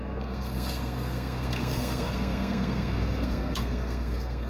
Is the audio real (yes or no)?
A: no